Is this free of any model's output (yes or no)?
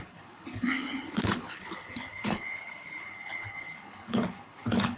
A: no